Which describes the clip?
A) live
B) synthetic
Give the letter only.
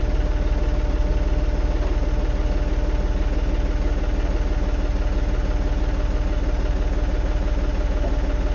A